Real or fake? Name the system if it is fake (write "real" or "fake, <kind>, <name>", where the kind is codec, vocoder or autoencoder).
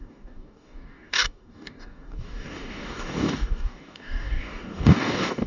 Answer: fake, codec, DAC